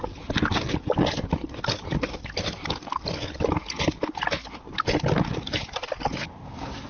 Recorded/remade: recorded